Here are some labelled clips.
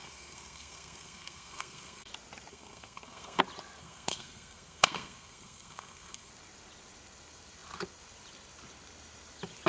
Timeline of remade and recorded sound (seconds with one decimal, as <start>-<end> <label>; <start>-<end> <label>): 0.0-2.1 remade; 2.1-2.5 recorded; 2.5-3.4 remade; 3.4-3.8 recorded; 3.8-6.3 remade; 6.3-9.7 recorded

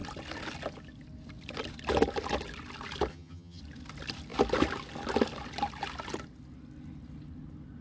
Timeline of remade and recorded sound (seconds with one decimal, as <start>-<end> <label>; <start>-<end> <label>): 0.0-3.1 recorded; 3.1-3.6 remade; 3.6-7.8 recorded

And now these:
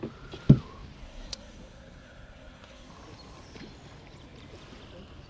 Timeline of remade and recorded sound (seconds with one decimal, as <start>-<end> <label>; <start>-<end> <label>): 0.0-1.0 recorded; 1.0-2.9 remade; 2.9-5.3 recorded